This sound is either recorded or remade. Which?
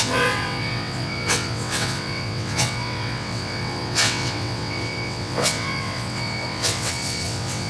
remade